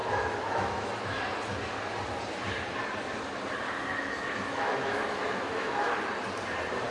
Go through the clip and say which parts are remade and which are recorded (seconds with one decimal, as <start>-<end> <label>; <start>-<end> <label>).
0.0-1.2 remade; 1.2-3.9 recorded; 3.9-6.0 remade; 6.0-6.9 recorded